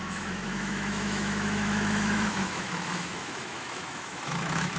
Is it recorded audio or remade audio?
remade